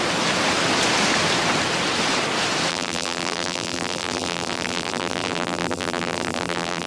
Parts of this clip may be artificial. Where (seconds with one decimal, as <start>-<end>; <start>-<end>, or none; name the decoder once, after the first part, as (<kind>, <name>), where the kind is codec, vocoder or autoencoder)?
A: 2.7-6.9 (vocoder, BigVGAN v2)